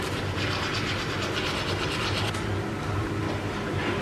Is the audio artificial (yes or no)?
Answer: no